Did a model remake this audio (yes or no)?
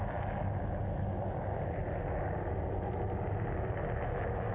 no